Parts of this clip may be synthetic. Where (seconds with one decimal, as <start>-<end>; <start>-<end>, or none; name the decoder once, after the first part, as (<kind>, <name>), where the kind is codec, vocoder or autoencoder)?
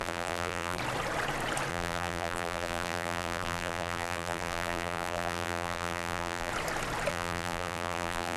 0.0-0.8 (vocoder, BigVGAN v2); 1.7-6.5; 7.1-8.4